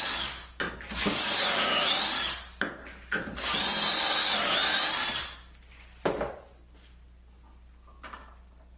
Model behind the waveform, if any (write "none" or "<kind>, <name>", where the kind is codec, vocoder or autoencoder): none